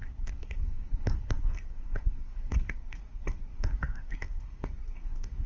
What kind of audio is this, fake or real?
fake